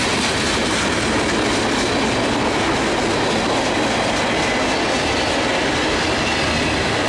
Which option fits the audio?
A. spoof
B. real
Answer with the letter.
B